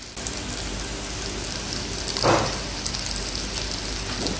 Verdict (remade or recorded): recorded